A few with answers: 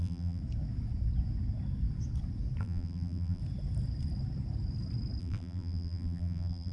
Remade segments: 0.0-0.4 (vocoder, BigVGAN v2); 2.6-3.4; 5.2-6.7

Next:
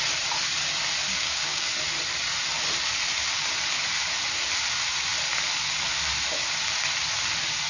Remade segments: 1.1-1.7 (codec, DAC)